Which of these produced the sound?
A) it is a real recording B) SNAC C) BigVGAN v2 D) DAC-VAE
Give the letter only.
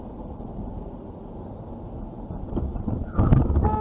A